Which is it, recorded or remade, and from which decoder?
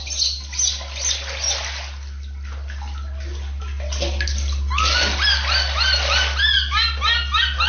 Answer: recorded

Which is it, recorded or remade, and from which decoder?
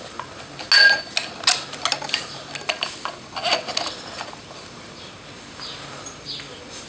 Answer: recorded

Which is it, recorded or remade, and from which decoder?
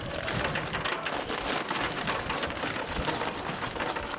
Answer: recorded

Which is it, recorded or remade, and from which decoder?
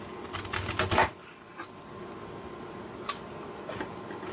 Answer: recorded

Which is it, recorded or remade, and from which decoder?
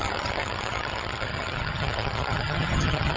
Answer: remade, vocoder, HiFi-GAN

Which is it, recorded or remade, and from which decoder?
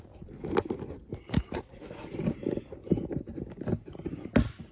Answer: recorded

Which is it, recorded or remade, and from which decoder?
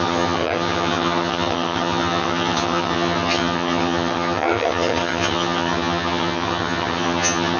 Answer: remade, vocoder, HiFi-GAN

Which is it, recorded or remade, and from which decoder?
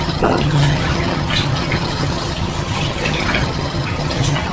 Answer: remade, vocoder, HiFi-GAN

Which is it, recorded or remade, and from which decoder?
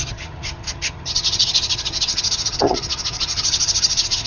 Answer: remade, vocoder, HiFi-GAN